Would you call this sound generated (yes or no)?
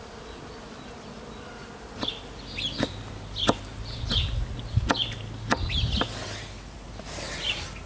no